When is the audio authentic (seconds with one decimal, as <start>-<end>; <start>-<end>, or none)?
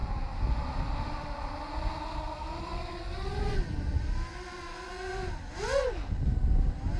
0.0-7.0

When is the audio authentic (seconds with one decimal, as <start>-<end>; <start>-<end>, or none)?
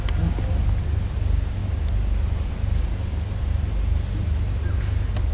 0.0-5.3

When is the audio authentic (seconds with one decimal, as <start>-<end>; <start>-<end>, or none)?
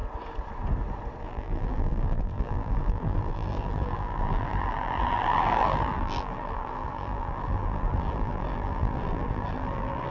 0.0-1.2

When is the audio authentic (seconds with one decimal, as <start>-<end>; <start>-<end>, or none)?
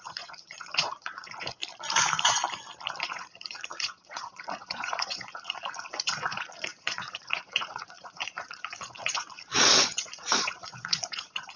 1.6-3.0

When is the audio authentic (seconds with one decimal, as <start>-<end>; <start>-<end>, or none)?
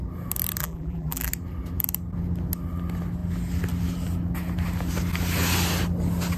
0.0-0.6; 1.3-6.4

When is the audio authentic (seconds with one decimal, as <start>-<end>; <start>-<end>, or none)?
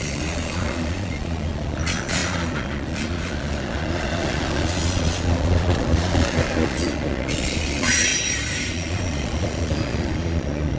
8.1-8.7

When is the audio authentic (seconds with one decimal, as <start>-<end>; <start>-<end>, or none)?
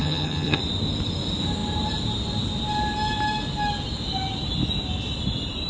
0.6-5.7